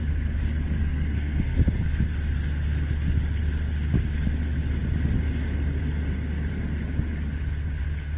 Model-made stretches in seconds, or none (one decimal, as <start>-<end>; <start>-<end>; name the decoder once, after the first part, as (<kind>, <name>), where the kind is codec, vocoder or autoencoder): 0.8-2.0 (codec, SNAC)